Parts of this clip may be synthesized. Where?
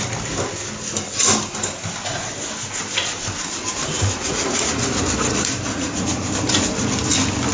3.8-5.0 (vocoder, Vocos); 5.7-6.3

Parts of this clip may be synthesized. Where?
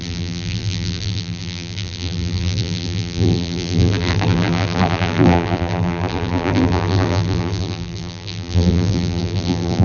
0.0-9.8 (vocoder, BigVGAN v2)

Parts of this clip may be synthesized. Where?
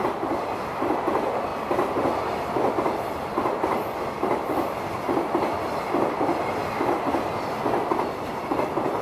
0.0-9.0 (vocoder, BigVGAN v2)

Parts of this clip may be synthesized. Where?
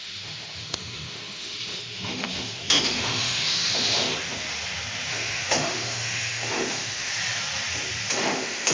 0.0-4.1 (autoencoder, DAC-VAE); 5.1-7.1; 8.1-8.7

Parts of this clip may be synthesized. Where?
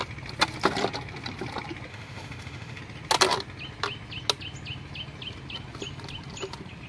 1.9-2.8 (autoencoder, DAC-VAE)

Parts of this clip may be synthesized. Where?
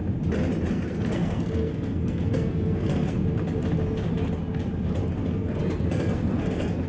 0.7-3.2 (codec, SNAC); 5.6-6.9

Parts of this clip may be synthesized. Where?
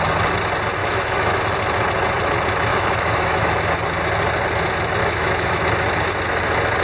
0.8-1.4 (autoencoder, DAC-VAE); 2.7-3.6; 5.0-5.6